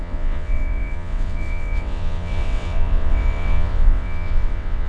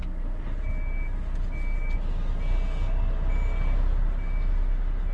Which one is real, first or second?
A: second